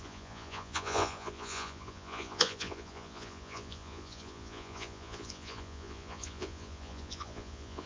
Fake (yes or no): yes